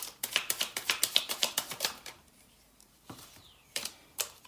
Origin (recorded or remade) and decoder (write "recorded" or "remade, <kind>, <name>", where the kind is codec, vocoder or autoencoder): remade, vocoder, BigVGAN v2